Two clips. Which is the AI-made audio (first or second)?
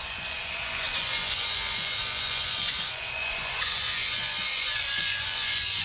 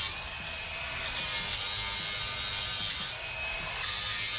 first